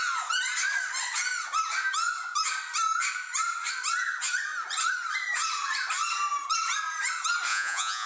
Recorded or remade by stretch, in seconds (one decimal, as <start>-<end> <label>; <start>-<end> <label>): 0.0-7.5 recorded; 7.5-8.1 remade